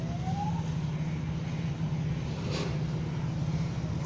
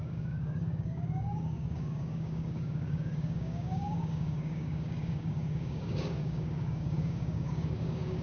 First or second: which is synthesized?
second